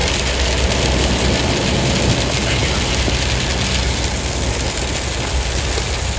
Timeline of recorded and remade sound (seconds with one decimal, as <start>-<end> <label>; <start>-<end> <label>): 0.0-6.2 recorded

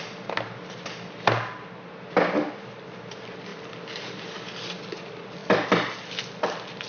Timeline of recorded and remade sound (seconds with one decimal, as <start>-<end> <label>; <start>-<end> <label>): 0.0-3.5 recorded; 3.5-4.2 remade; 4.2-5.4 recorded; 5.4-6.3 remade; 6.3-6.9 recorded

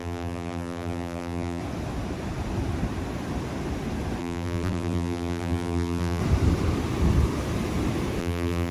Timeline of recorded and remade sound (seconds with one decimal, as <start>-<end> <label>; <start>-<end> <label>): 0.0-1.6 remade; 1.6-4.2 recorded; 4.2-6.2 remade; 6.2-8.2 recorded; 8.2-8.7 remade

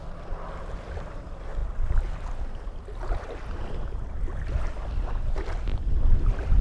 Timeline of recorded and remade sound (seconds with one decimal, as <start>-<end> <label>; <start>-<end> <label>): 0.0-6.6 remade

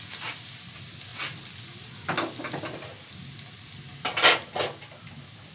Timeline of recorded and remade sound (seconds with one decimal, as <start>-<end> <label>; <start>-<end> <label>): 0.0-5.5 recorded

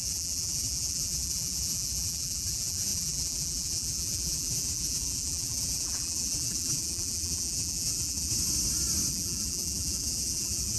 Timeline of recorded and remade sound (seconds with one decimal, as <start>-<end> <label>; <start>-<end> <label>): 0.0-8.3 remade; 8.3-9.1 recorded; 9.1-10.8 remade

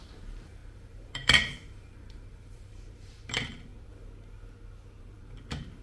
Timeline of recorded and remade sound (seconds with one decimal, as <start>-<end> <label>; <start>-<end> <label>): 0.0-3.7 remade; 3.7-5.0 recorded; 5.0-5.8 remade